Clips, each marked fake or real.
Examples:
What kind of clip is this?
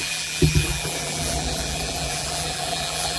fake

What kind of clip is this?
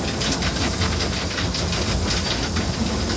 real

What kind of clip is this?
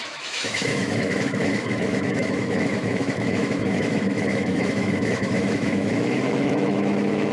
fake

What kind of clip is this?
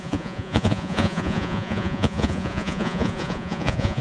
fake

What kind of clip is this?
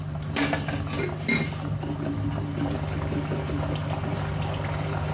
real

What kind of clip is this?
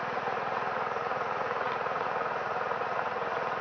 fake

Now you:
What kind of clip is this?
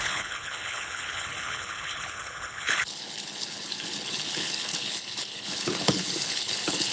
fake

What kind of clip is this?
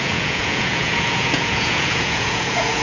fake